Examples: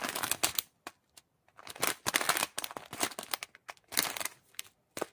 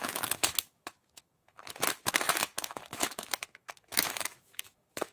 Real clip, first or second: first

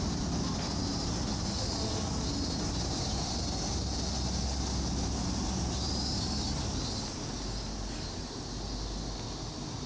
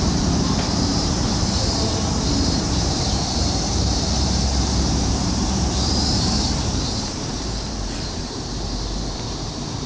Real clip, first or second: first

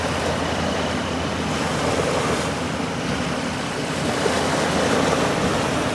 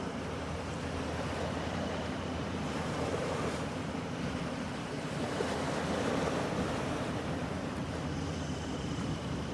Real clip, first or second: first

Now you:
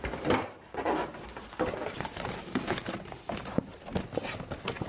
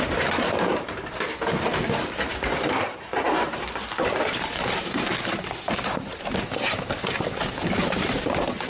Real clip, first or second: first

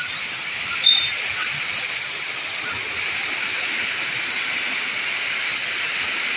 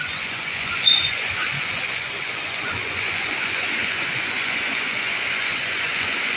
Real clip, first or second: first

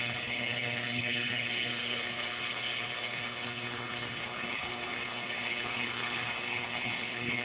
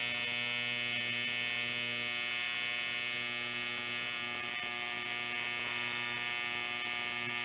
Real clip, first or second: second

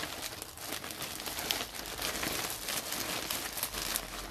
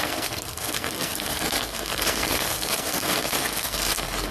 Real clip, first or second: first